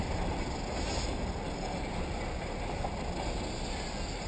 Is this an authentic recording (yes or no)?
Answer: yes